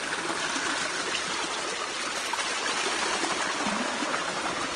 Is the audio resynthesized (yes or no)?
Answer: no